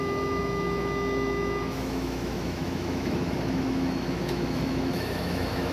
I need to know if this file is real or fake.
fake